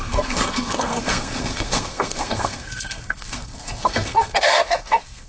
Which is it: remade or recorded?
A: remade